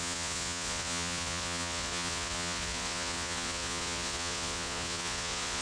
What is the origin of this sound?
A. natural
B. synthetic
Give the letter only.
B